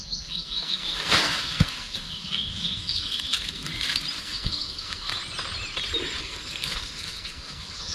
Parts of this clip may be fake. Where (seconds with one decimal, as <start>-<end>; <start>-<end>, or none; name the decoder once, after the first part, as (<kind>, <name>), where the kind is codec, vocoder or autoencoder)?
0.0-3.7 (codec, SNAC); 4.2-5.1; 6.2-7.9